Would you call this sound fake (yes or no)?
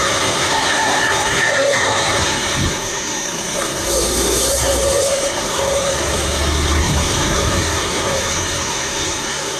yes